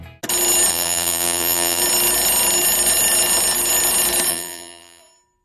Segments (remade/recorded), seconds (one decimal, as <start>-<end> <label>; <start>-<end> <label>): 0.0-0.7 recorded; 0.7-1.8 remade; 1.8-4.3 recorded; 4.3-5.0 remade; 5.0-5.4 recorded